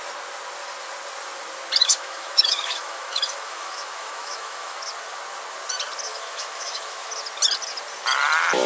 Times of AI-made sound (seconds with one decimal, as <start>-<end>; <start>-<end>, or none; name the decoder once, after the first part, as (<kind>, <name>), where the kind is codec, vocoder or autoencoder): 1.8-4.8 (autoencoder, DAC-VAE); 6.1-7.1

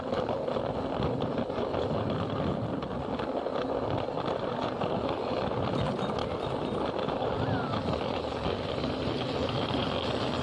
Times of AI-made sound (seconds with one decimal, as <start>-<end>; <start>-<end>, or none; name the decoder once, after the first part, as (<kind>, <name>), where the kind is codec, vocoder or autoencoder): none